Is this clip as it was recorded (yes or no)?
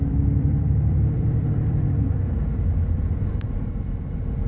no